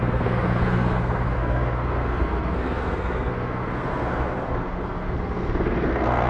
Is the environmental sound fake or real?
fake